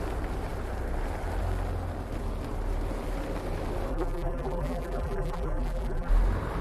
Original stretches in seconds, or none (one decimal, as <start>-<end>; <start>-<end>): 0.0-3.9; 6.1-6.6